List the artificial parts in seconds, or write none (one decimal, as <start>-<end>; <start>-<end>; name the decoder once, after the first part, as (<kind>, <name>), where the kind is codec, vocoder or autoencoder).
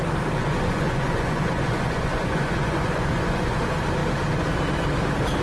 0.4-3.6 (vocoder, Vocos)